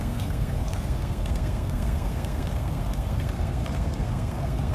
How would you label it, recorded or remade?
remade